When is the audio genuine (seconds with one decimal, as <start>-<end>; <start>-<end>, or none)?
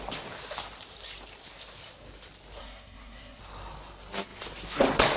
0.0-2.6; 3.4-5.2